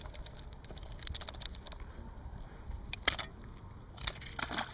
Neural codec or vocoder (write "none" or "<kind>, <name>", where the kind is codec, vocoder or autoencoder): none